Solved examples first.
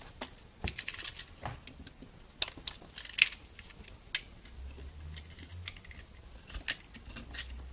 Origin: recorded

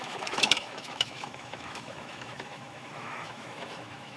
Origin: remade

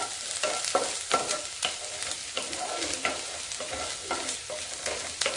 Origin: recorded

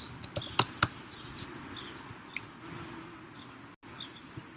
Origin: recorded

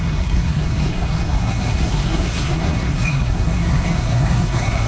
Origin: remade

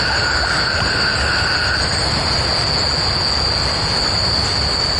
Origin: recorded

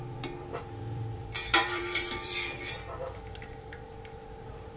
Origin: remade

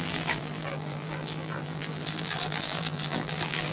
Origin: remade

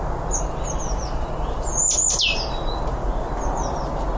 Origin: recorded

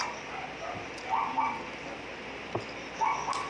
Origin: recorded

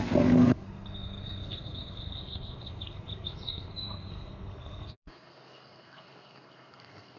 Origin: remade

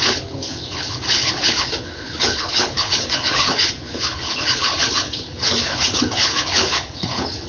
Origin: remade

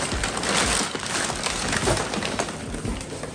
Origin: recorded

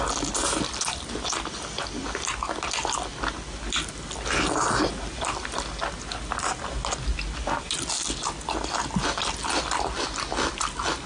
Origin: recorded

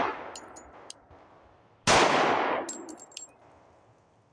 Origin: recorded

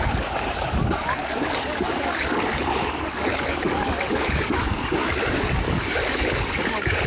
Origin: remade